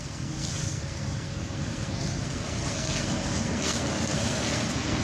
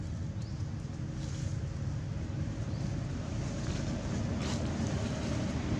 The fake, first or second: first